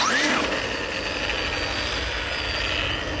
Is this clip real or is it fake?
real